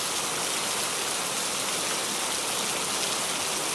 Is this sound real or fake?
real